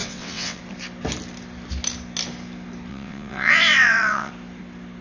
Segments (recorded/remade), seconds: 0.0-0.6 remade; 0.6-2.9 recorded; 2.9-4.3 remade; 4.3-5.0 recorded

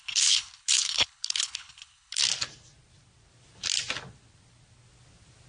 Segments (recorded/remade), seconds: 0.0-2.2 remade; 2.2-5.5 recorded